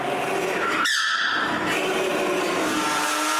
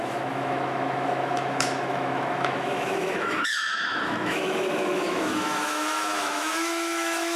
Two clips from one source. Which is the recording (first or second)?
first